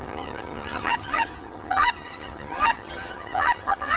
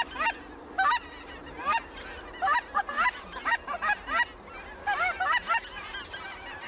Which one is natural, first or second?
second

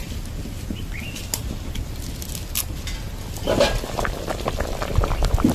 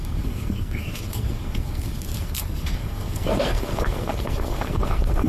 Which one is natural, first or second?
first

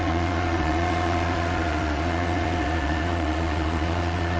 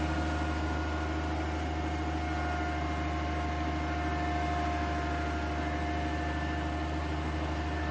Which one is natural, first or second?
second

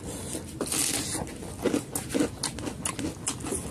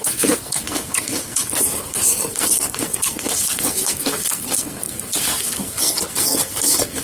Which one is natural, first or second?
first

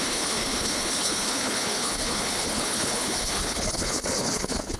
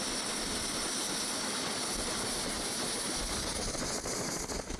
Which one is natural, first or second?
second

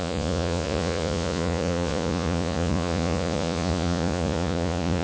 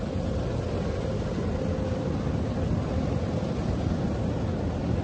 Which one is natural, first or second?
second